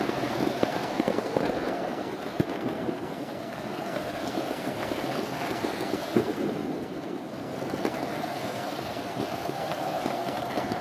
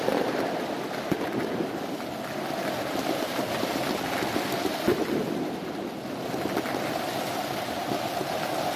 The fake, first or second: first